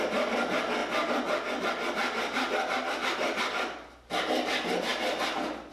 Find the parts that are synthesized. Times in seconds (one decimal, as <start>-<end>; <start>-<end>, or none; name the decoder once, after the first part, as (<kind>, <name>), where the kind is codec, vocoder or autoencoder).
none